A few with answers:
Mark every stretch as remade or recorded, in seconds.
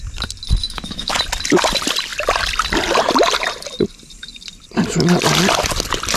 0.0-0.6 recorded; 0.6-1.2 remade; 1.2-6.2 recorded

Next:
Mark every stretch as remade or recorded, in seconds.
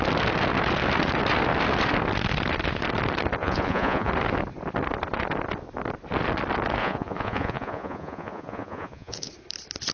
0.0-3.4 recorded; 3.4-4.1 remade; 4.1-6.8 recorded; 6.8-9.3 remade; 9.3-9.9 recorded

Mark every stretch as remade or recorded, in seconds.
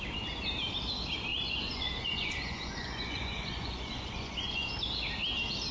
0.0-1.3 recorded; 1.3-4.7 remade; 4.7-5.7 recorded